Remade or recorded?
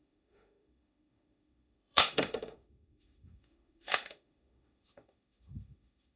remade